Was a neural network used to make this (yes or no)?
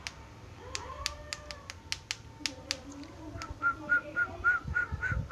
no